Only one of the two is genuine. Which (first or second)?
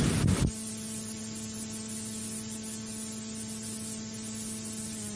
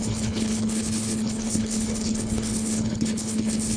first